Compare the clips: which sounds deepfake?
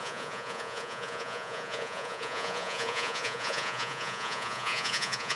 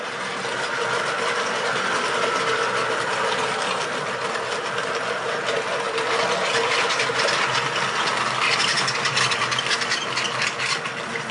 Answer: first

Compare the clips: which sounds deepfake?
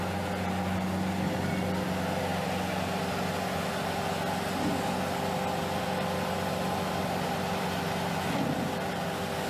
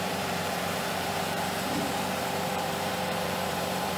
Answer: second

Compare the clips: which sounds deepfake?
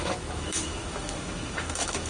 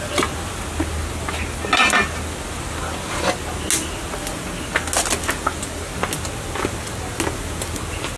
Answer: first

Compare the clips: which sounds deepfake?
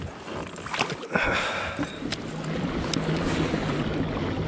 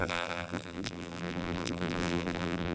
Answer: second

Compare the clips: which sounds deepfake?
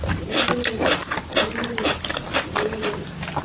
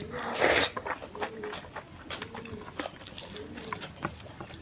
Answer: second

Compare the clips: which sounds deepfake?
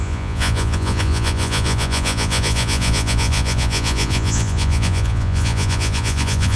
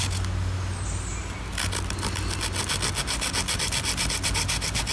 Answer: first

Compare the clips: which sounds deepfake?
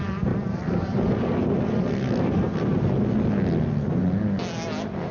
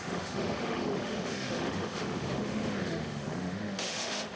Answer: second